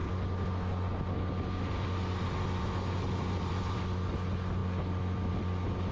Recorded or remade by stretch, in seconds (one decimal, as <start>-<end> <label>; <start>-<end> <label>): 0.0-5.9 recorded